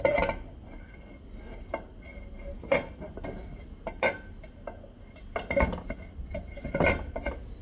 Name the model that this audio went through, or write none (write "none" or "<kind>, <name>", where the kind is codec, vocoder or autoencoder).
none